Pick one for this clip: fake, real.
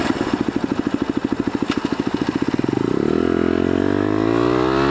real